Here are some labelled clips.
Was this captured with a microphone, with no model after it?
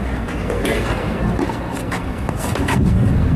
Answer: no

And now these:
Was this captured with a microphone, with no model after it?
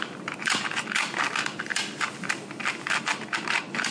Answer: yes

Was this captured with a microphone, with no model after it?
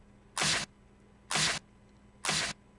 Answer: yes